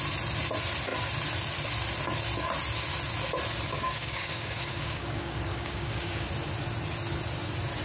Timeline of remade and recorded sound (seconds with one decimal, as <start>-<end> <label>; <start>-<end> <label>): 0.0-3.7 recorded; 3.7-6.3 remade; 6.3-7.8 recorded